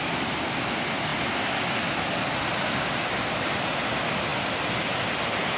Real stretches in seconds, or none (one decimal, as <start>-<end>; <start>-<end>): 0.0-5.6